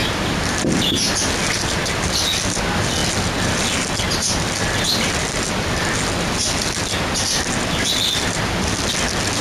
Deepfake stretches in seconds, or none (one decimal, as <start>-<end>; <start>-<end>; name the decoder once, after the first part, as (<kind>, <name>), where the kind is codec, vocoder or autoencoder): none